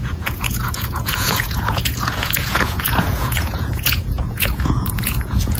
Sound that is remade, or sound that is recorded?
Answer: remade